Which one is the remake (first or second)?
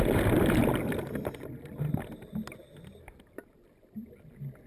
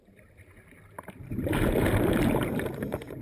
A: second